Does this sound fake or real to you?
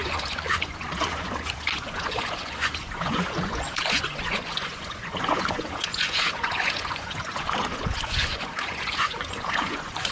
fake